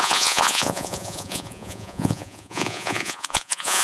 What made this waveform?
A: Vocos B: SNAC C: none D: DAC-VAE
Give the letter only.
A